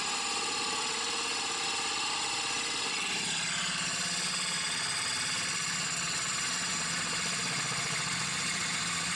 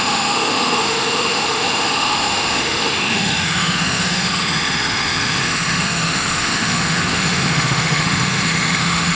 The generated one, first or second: second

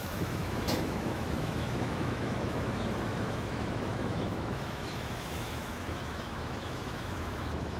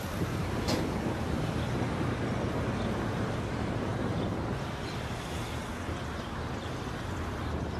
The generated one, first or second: first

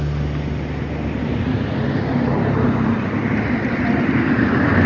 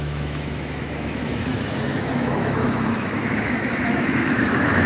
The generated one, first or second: second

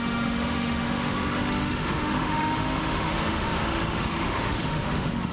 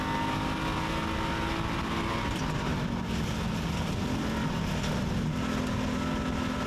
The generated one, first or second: first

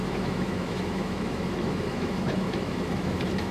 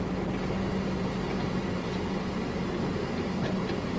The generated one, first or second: first